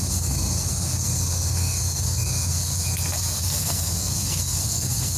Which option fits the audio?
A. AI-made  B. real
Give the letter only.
A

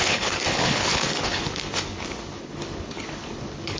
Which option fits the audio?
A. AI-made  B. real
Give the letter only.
A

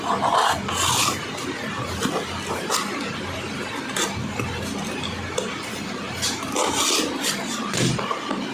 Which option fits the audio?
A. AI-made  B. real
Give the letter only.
B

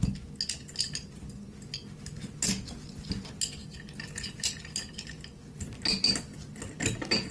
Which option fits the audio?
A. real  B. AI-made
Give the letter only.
A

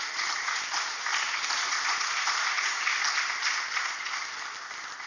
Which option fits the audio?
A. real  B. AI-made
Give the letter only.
A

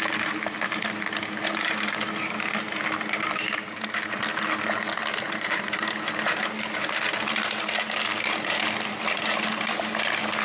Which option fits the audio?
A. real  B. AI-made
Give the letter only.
A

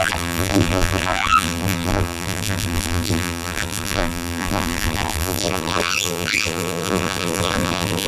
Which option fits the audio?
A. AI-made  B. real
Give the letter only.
A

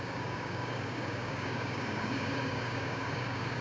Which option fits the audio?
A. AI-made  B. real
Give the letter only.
A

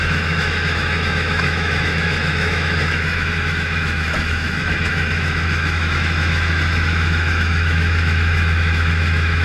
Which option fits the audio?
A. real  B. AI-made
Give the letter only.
B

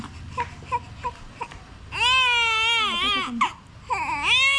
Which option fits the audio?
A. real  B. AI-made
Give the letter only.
A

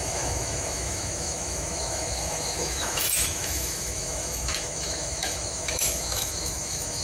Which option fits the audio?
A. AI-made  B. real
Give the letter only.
A